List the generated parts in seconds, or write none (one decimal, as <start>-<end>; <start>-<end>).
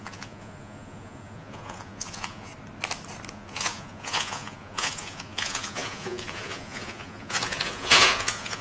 0.0-2.5; 3.3-8.6